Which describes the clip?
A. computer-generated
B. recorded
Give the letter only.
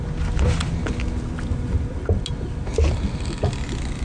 B